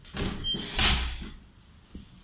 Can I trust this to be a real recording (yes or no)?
yes